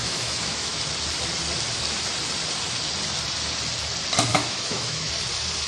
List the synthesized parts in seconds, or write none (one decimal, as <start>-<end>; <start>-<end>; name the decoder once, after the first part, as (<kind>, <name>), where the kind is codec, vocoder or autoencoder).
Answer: 0.0-0.8 (autoencoder, DAC-VAE); 4.3-5.1